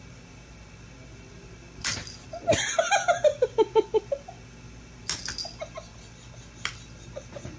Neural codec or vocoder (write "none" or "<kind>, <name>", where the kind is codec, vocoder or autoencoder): none